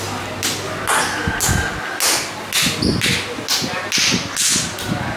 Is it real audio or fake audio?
real